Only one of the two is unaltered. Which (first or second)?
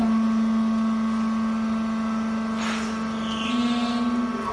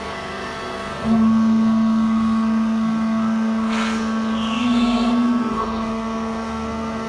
first